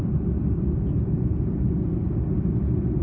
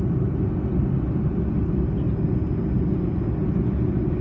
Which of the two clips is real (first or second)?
second